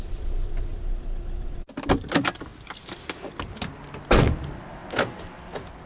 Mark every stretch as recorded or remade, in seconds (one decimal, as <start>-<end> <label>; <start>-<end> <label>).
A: 0.0-5.9 recorded